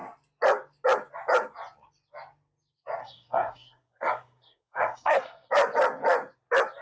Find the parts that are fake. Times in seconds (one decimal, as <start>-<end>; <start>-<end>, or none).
3.0-5.5